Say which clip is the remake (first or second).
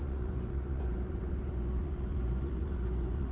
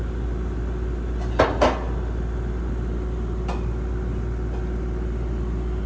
first